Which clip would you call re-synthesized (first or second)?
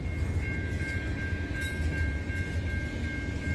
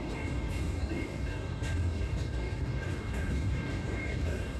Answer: second